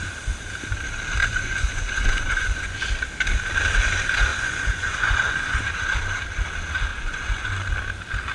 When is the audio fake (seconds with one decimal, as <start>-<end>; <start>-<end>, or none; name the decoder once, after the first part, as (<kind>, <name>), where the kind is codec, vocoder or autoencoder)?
1.2-2.9 (vocoder, Vocos); 4.3-5.6; 6.9-7.5